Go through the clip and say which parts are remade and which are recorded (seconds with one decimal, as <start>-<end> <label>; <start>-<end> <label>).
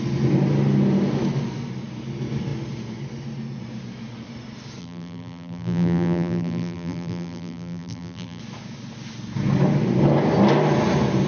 0.0-4.8 recorded; 4.8-8.4 remade; 8.4-11.3 recorded